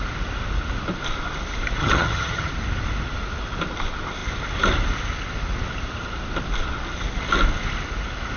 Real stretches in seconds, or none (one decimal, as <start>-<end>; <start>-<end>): 0.0-1.8; 2.5-8.4